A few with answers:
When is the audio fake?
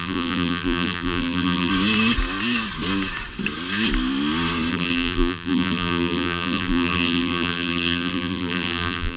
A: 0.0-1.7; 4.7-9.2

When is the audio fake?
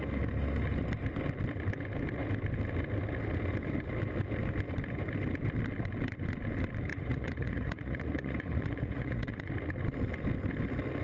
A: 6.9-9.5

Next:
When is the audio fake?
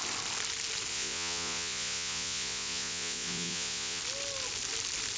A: 0.9-4.0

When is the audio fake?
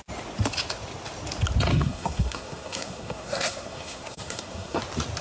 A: 1.7-4.8